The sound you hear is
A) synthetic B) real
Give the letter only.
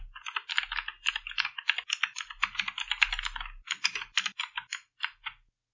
B